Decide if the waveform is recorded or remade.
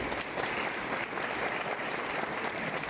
remade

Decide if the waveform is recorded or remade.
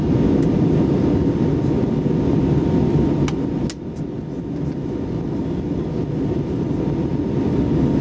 recorded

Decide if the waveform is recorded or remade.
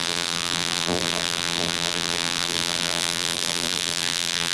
remade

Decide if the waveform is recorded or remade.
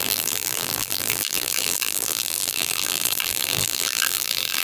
remade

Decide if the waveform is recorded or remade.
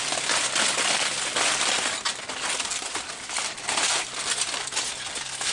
recorded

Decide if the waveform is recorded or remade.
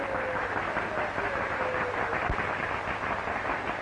recorded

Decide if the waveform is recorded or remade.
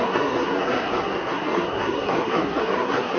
remade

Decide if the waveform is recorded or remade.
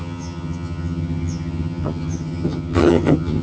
remade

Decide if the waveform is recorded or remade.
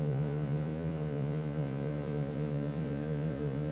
remade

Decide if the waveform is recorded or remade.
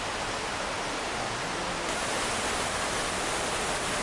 recorded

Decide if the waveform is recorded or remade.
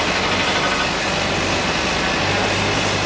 recorded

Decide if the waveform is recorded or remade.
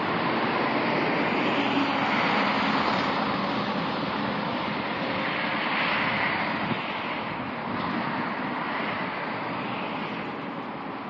recorded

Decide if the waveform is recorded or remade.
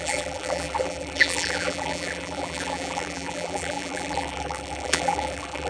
remade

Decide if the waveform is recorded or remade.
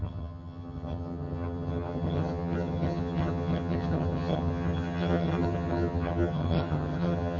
remade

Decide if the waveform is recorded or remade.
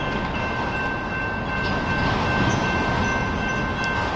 recorded